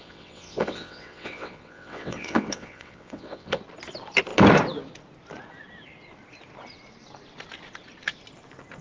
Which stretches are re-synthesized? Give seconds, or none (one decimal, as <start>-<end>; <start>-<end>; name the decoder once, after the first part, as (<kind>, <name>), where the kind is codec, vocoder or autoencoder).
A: 0.0-3.6 (vocoder, WaveNeXt)